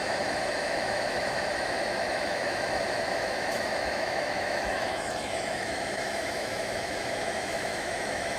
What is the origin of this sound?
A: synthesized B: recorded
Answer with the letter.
A